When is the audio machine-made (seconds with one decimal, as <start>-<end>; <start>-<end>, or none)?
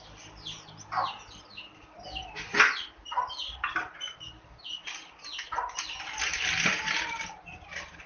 6.3-8.1